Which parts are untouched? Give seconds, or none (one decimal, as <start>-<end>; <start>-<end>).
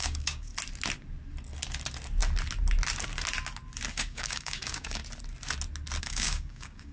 0.5-3.9; 5.0-6.0